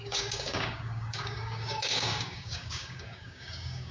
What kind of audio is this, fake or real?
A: fake